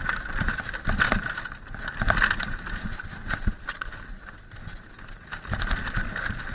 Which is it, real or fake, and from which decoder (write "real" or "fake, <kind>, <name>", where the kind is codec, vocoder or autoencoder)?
real